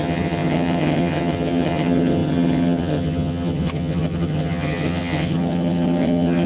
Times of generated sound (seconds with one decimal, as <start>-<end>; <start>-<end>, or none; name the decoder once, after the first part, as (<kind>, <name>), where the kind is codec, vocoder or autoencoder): 0.0-6.5 (vocoder, HiFi-GAN)